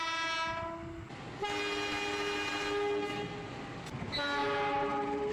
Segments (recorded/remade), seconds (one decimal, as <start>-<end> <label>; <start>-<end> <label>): 0.0-5.3 recorded